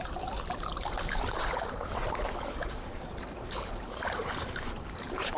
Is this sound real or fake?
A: fake